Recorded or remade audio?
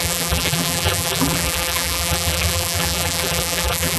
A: remade